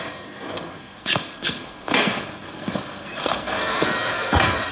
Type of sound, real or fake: fake